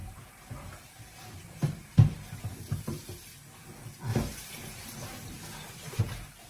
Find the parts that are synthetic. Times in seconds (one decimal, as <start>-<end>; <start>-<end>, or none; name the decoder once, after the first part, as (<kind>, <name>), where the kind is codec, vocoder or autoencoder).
0.0-2.4 (vocoder, BigVGAN v2)

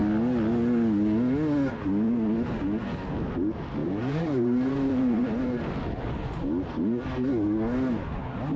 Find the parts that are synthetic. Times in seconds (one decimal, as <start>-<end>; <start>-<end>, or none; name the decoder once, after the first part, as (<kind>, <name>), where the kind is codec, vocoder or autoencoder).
3.8-5.7 (vocoder, BigVGAN v2)